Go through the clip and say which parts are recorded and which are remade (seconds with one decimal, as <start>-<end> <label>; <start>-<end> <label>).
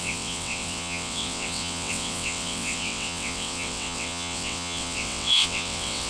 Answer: 0.0-6.1 remade